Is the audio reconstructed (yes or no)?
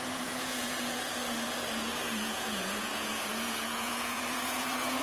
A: yes